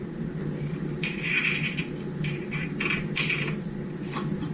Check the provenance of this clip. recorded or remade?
recorded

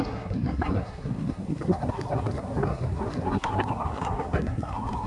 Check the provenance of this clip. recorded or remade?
remade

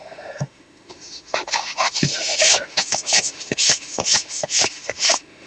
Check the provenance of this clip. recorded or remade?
remade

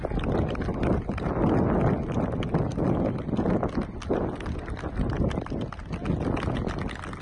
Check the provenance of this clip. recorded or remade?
recorded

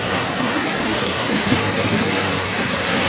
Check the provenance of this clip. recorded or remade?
remade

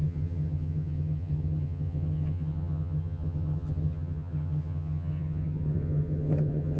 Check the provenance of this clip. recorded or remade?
remade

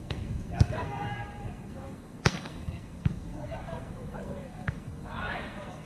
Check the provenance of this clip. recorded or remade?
remade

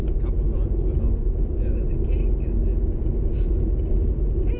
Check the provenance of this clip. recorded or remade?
recorded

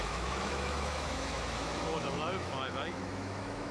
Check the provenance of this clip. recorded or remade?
remade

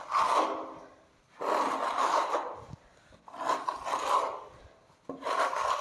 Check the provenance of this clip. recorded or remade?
recorded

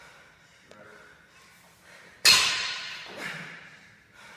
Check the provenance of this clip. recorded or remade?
recorded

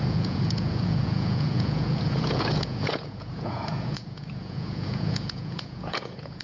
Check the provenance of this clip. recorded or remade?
remade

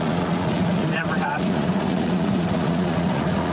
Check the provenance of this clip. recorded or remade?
remade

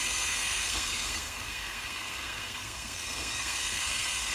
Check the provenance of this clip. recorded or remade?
remade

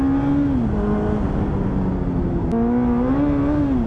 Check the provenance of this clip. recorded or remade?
recorded